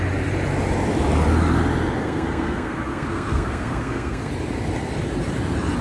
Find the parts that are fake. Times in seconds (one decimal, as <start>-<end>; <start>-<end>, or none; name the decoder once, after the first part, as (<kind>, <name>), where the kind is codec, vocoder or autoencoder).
2.0-4.3 (codec, SNAC)